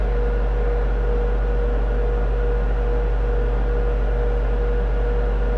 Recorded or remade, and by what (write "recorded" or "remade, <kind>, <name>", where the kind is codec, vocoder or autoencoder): recorded